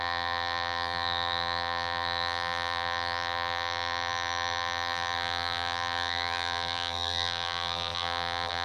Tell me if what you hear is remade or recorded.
remade